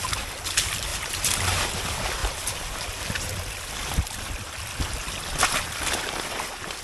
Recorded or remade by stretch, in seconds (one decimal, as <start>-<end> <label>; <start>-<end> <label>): 0.0-0.9 recorded; 0.9-1.8 remade; 1.8-2.2 recorded; 2.2-3.7 remade; 3.7-6.8 recorded